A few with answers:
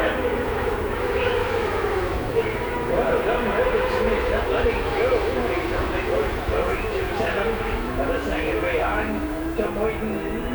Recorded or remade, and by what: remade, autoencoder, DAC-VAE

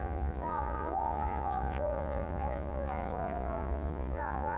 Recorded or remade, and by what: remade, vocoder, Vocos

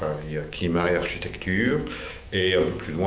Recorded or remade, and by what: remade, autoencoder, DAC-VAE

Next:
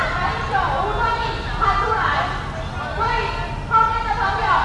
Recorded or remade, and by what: recorded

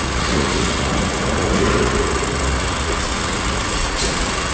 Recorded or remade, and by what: remade, vocoder, Vocos